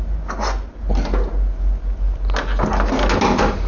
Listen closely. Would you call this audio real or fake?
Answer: real